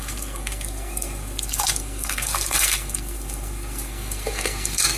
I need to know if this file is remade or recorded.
remade